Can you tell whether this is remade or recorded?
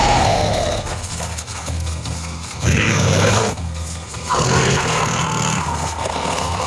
remade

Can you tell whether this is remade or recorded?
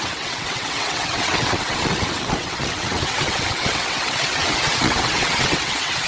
remade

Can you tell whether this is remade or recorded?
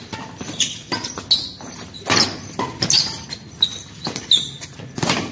recorded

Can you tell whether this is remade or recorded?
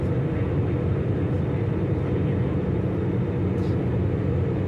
recorded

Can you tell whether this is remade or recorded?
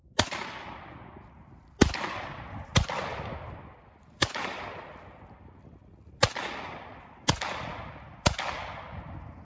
recorded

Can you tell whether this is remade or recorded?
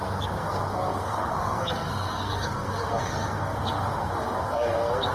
remade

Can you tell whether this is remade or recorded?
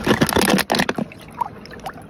recorded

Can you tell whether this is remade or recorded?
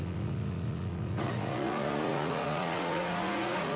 remade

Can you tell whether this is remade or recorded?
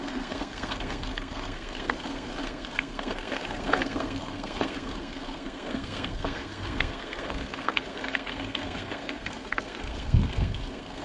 remade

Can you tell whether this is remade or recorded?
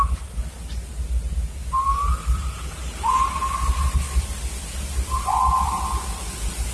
recorded